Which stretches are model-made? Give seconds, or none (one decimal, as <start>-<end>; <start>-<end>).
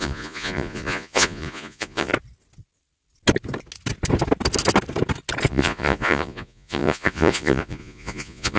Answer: 0.0-2.1; 5.5-8.6